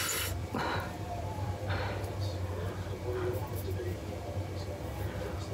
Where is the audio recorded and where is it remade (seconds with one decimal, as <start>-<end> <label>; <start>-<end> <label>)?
0.0-0.4 recorded; 0.4-1.6 remade; 1.6-5.5 recorded